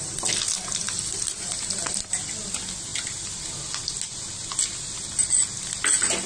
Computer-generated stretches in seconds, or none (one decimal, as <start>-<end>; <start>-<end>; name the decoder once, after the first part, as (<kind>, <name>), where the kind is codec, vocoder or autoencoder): none